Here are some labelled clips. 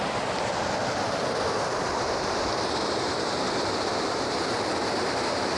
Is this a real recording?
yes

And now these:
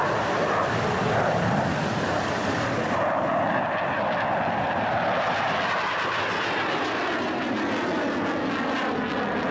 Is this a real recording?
yes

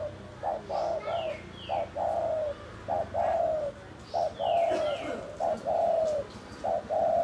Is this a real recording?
yes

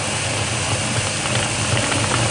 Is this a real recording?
yes